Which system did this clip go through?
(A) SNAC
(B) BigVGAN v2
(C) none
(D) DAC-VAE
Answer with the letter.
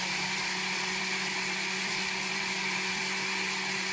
B